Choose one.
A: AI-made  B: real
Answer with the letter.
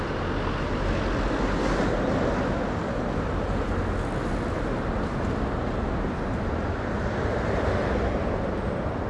B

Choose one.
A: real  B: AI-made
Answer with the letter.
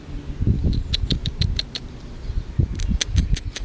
A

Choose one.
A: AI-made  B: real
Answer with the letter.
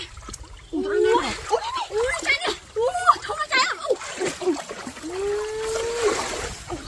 B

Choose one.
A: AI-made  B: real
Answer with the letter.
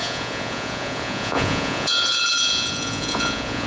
A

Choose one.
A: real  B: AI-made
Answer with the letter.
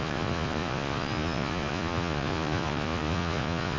B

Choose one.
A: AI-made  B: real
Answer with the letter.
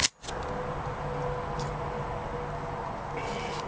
B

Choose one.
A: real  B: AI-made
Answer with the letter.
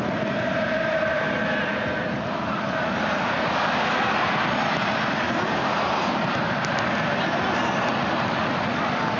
A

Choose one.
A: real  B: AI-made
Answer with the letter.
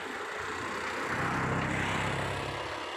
A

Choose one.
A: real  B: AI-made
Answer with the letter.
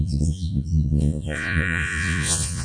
B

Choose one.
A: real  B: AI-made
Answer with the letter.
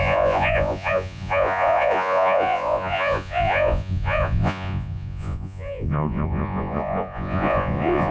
B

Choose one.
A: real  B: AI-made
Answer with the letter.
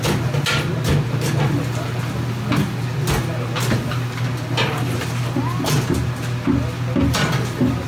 A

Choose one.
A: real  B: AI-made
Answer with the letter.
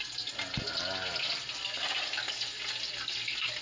A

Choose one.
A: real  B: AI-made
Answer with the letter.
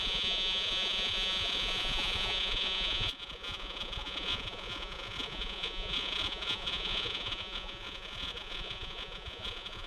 B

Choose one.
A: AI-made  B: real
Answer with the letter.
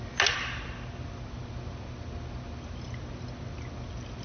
B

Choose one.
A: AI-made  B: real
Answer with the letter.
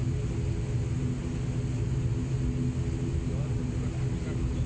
B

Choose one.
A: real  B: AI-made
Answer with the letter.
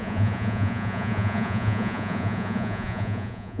B